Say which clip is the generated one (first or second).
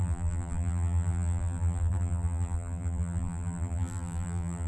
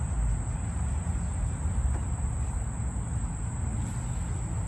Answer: first